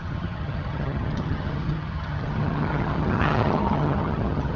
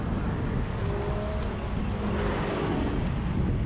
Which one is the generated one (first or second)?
first